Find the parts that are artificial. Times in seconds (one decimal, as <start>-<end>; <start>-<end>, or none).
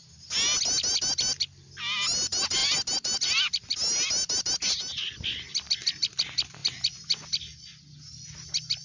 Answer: none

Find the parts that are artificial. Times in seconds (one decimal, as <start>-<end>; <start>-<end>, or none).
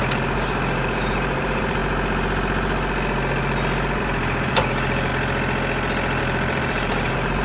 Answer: 0.0-1.8; 4.0-5.1; 6.2-7.4